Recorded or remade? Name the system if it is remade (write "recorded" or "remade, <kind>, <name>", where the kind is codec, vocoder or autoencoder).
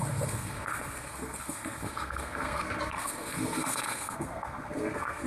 remade, codec, SNAC